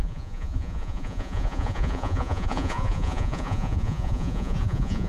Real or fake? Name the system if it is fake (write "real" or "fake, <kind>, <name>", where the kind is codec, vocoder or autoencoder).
fake, vocoder, Vocos